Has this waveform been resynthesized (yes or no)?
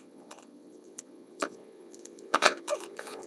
yes